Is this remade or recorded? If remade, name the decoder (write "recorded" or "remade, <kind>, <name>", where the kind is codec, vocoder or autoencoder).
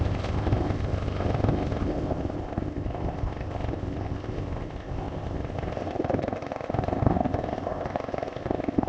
remade, codec, ZipCodec